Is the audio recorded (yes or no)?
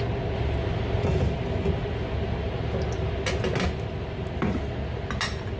yes